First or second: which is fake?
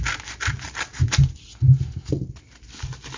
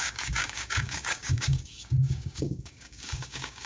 second